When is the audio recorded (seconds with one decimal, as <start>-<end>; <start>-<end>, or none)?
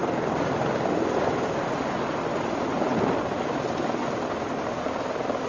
1.8-5.5